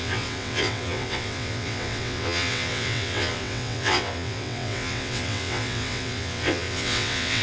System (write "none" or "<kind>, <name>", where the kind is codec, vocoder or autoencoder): vocoder, WaveNeXt